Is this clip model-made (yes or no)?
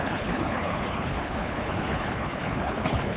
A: yes